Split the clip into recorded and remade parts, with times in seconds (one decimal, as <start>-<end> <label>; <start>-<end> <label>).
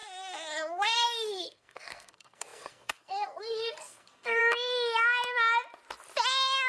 0.0-4.4 remade; 4.4-6.7 recorded